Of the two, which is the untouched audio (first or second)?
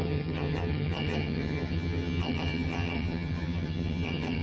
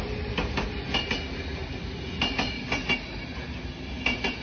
second